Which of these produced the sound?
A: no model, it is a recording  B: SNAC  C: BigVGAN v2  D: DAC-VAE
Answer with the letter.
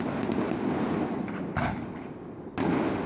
A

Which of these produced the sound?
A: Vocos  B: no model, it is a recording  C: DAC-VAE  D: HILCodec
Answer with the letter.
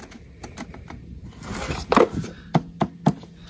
B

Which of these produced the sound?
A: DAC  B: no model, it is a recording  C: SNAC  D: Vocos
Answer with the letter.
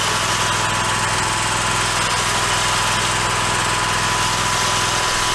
B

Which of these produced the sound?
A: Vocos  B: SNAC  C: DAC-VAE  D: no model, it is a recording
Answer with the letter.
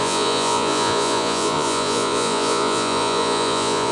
A